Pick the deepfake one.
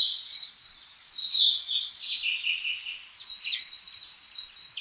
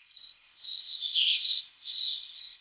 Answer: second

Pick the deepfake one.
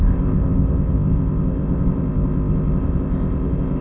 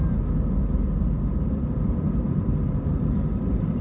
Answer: first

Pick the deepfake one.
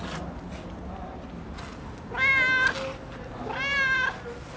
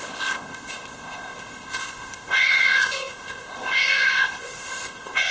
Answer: second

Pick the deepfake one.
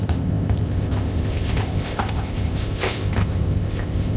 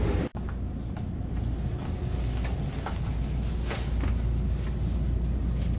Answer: first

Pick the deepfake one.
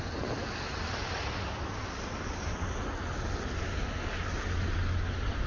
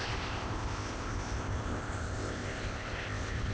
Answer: second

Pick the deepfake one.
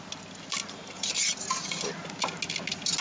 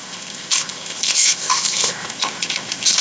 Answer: second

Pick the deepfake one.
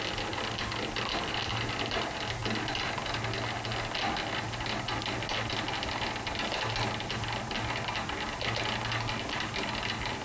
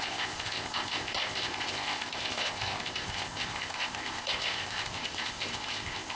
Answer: second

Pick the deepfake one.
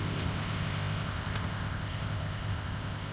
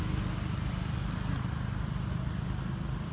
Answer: first